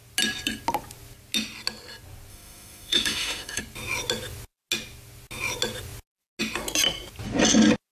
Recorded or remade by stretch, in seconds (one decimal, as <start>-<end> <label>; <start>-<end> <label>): 0.0-2.3 recorded; 2.3-3.6 remade; 3.6-7.9 recorded